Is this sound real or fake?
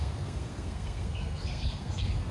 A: fake